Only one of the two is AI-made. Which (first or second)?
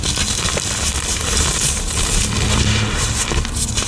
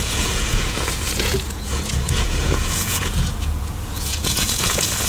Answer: second